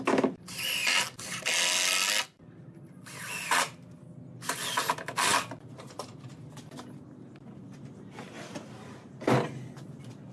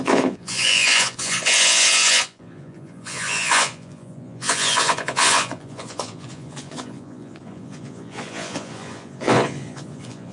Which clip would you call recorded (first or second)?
first